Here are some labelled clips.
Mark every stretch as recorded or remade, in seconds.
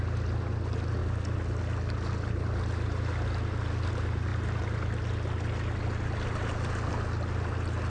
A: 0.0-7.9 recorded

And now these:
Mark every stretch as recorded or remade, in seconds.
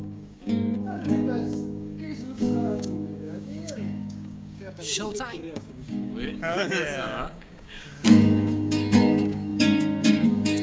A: 0.0-10.6 remade